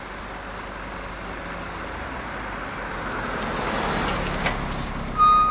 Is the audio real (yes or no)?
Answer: yes